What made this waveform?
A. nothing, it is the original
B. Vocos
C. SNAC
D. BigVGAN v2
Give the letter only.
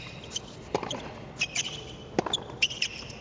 A